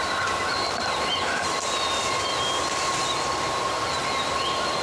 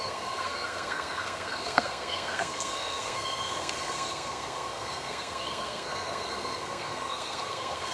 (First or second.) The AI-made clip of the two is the second